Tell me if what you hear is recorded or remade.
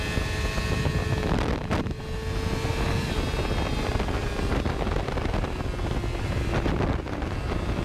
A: recorded